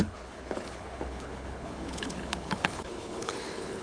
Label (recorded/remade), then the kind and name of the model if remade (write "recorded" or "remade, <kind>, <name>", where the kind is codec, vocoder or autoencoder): remade, codec, HILCodec